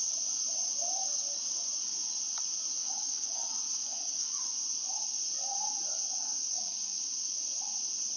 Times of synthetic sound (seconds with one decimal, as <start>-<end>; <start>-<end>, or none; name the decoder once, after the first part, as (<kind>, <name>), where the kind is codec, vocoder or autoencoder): 2.8-4.4 (codec, DAC); 6.5-7.0